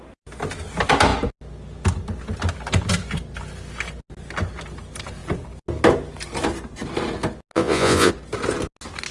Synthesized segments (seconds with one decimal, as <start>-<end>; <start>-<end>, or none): 7.5-8.1